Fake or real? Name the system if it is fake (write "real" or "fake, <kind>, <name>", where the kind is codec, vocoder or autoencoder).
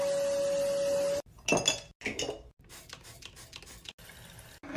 real